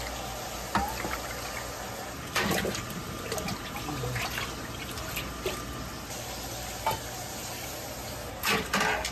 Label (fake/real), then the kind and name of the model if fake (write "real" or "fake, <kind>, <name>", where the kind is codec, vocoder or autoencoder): real